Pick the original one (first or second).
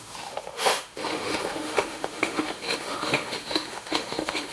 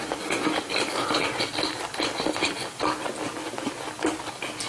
second